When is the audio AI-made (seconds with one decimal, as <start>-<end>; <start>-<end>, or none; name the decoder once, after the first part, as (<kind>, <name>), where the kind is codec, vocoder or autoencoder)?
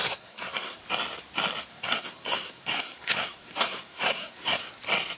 0.0-0.8 (codec, SNAC); 1.7-4.6